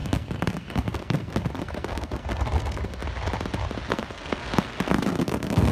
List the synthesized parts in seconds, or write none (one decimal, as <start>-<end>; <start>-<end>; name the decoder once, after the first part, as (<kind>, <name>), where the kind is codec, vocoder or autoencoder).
0.0-3.0 (codec, SNAC); 3.9-5.7

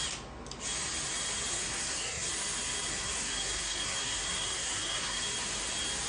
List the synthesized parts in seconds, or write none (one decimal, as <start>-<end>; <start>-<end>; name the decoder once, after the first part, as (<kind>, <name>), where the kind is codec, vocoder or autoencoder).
1.5-2.3 (codec, SNAC); 2.9-5.2